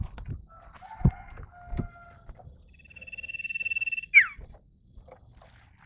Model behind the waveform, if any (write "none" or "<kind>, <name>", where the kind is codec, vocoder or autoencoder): none